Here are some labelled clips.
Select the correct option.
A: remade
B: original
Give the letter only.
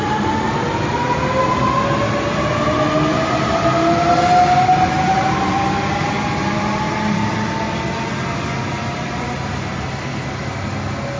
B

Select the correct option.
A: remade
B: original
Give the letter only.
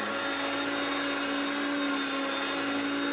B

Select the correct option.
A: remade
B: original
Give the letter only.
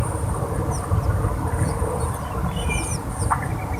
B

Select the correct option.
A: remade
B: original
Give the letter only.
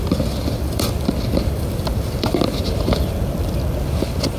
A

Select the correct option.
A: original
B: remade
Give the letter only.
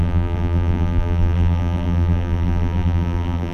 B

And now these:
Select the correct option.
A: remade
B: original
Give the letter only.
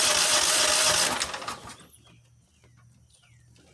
B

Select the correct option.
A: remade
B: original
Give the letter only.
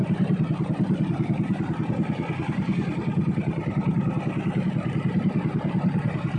B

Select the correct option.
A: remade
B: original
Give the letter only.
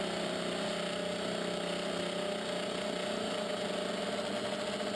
B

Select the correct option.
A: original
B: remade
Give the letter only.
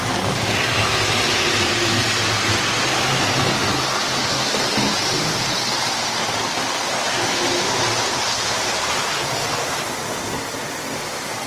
A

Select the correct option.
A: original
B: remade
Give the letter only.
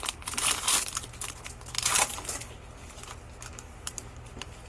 A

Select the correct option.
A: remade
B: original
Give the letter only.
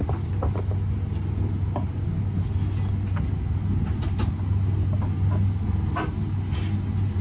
B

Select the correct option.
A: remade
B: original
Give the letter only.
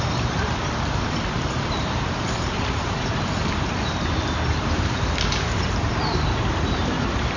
A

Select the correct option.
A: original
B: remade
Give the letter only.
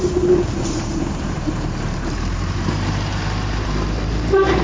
B